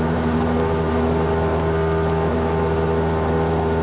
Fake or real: real